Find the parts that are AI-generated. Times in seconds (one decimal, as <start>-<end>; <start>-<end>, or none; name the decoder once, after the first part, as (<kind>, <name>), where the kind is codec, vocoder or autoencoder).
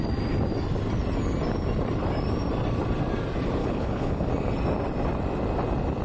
3.6-4.3 (codec, HILCodec)